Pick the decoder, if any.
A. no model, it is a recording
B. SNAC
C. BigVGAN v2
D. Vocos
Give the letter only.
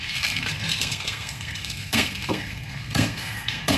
B